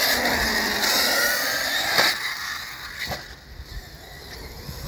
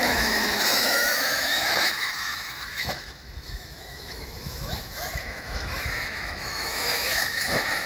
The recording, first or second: first